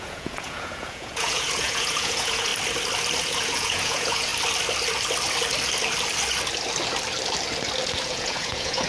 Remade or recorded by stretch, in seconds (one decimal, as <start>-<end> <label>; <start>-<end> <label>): 0.0-2.5 remade; 2.5-3.2 recorded; 3.2-4.3 remade; 4.3-8.1 recorded; 8.1-8.9 remade